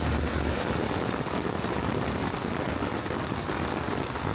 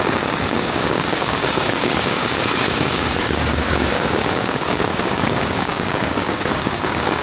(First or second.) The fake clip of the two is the second